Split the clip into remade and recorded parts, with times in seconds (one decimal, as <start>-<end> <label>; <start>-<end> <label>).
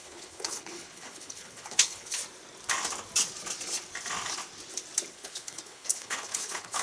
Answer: 0.0-2.2 remade; 2.2-5.1 recorded; 5.1-6.8 remade